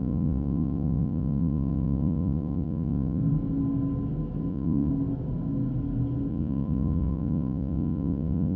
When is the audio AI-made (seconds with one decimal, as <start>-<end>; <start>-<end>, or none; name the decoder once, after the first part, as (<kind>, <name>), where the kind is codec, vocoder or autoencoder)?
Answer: 0.0-3.2 (vocoder, Vocos); 4.5-4.9; 6.3-8.6